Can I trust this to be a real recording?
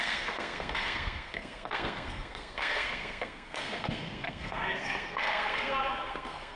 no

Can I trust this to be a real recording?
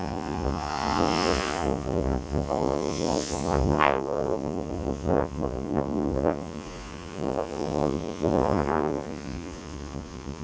no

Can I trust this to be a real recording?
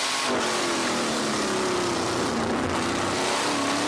yes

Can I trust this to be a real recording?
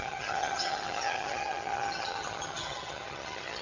no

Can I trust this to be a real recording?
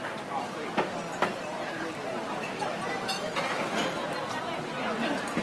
yes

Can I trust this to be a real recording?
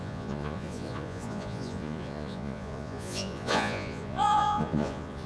no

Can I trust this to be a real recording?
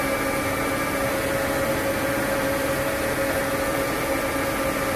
yes